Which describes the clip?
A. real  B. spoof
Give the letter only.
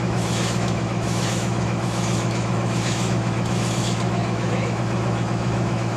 B